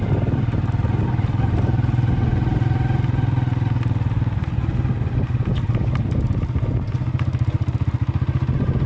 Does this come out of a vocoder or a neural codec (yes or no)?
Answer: no